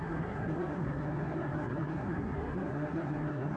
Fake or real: fake